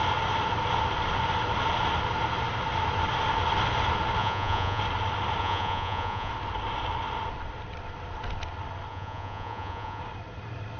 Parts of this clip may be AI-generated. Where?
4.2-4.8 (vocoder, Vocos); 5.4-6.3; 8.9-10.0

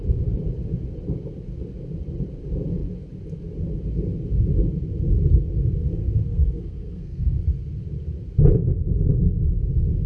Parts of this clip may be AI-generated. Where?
5.8-7.4 (codec, SNAC)

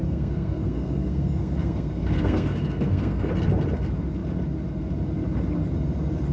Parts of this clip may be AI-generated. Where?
0.0-3.3 (codec, SNAC)

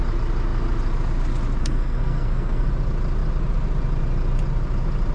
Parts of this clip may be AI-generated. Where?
1.6-2.7 (codec, SNAC)

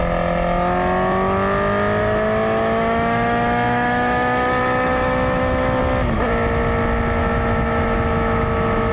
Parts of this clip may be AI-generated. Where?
2.0-5.8 (autoencoder, DAC-VAE); 7.2-8.9

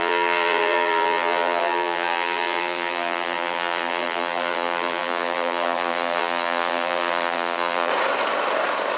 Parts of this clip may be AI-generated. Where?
0.0-7.9 (vocoder, BigVGAN v2)